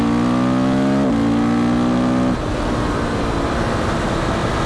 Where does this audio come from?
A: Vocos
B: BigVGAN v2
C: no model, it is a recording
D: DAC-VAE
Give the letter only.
C